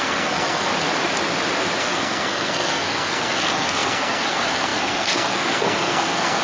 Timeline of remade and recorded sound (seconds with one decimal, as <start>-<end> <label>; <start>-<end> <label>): 0.0-0.7 remade; 0.7-1.8 recorded; 1.8-6.4 remade